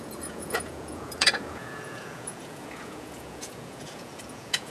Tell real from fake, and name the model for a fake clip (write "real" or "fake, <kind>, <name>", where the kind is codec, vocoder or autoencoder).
fake, vocoder, Vocos